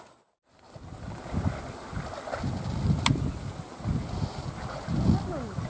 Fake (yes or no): no